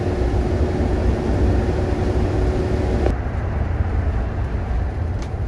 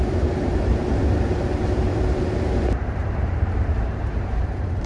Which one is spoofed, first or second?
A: second